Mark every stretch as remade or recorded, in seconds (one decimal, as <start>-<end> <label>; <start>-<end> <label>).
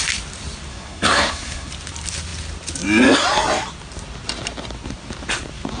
0.0-0.7 recorded; 0.7-1.7 remade; 1.7-5.8 recorded